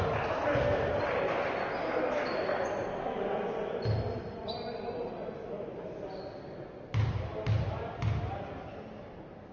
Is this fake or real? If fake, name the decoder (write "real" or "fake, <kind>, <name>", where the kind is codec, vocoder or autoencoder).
real